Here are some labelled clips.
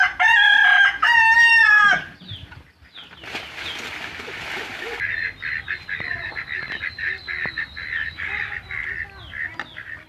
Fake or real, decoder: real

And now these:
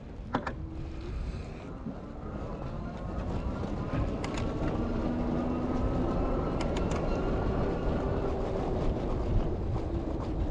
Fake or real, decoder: real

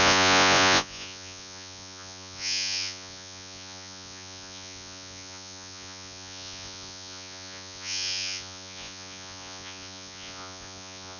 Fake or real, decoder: fake, vocoder, Vocos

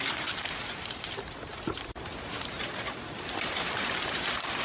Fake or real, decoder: real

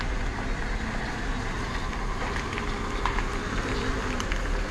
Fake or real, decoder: real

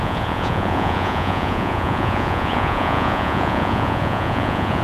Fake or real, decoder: fake, vocoder, Vocos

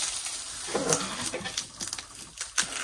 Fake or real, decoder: real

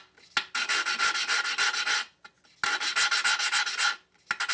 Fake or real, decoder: real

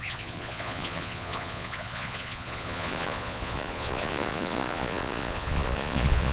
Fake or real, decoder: fake, vocoder, Vocos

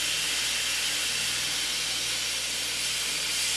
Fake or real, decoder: real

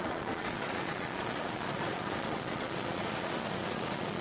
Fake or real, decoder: fake, vocoder, Vocos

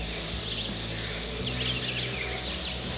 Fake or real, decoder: real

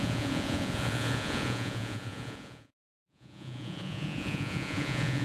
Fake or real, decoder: fake, vocoder, Vocos